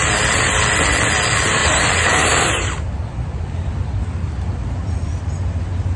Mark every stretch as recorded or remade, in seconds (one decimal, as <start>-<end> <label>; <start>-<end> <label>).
0.0-1.6 recorded; 1.6-5.2 remade; 5.2-6.0 recorded

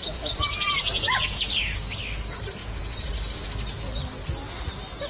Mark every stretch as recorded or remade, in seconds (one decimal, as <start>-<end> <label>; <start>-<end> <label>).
0.0-1.5 remade; 1.5-2.6 recorded; 2.6-3.1 remade; 3.1-5.1 recorded

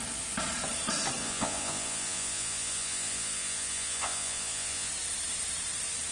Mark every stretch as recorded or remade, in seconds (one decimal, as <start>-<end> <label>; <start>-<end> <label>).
0.0-1.2 recorded; 1.2-4.9 remade; 4.9-6.1 recorded

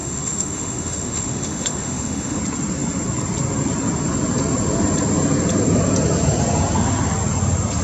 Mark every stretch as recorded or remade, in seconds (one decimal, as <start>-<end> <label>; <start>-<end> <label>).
0.0-2.4 remade; 2.4-7.8 recorded

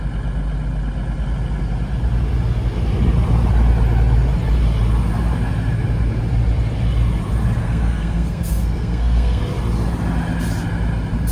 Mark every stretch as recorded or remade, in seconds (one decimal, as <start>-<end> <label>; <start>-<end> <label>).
0.0-7.6 recorded; 7.6-9.4 remade; 9.4-11.3 recorded

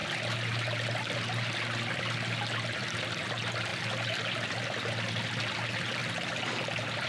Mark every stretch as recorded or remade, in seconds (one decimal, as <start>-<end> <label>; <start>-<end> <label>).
0.0-7.1 recorded

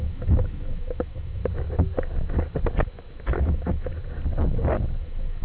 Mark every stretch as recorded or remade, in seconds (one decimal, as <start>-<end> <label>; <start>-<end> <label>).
0.0-1.4 remade; 1.4-3.4 recorded; 3.4-3.9 remade; 3.9-5.0 recorded; 5.0-5.4 remade